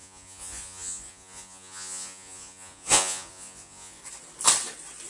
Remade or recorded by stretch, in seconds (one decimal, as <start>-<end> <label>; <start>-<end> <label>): 0.0-4.0 remade; 4.0-5.1 recorded